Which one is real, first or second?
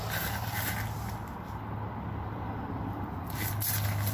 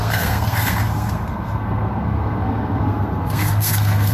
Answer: first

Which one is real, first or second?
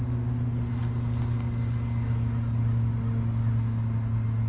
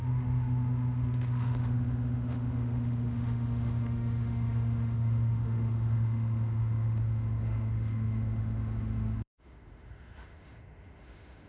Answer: first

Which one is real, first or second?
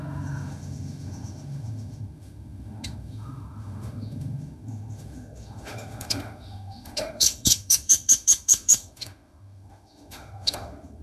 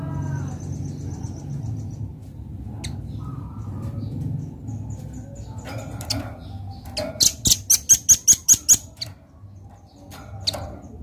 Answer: second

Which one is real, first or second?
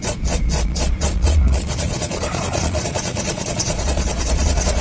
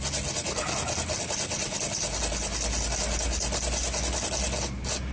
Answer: second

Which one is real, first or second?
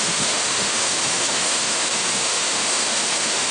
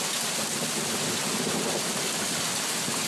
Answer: second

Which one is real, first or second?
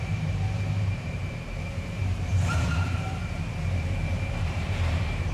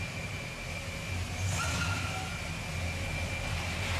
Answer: second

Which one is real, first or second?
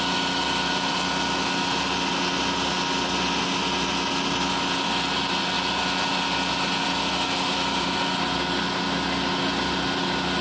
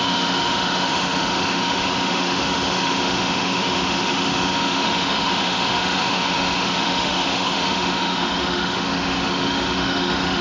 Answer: first